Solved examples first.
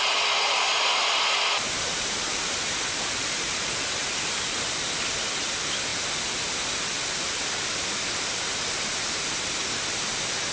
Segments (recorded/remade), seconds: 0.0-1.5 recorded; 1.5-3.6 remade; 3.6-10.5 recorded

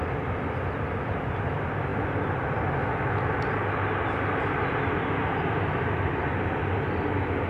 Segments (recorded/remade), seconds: 0.0-7.5 recorded